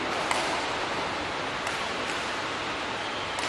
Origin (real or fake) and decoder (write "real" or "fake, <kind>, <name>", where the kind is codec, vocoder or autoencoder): real